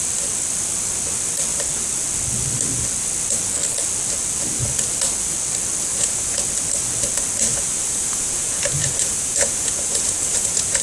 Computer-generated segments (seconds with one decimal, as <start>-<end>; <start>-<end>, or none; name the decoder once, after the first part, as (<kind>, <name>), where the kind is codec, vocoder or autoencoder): 5.9-6.4 (vocoder, Vocos); 7.5-10.8